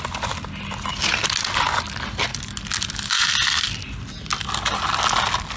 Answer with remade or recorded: recorded